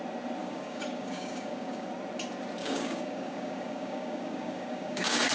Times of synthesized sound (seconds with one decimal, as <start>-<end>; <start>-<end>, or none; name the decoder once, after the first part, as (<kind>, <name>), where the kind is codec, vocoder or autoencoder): 0.4-1.9 (codec, DAC); 2.6-5.3